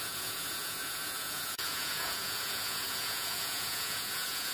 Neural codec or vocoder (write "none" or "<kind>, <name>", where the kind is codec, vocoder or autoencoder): vocoder, Vocos